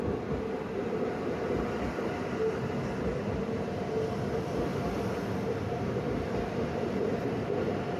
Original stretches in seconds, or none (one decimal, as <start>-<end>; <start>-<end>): 0.0-8.0

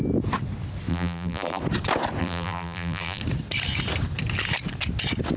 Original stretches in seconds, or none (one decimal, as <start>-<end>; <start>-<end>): 0.0-0.9; 1.6-2.2; 3.2-5.4

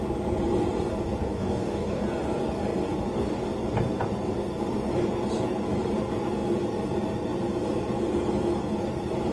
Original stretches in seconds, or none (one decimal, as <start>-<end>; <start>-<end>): 0.0-1.2; 2.0-9.3

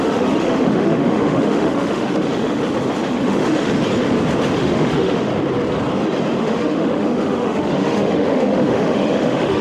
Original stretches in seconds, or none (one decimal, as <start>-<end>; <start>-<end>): 2.6-3.2; 3.7-4.6; 5.3-6.4